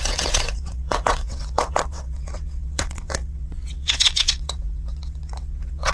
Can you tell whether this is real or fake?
fake